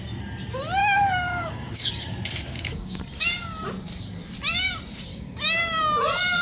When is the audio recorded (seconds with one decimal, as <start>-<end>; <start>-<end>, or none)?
0.0-0.8; 1.9-2.5; 3.0-5.1; 5.8-6.4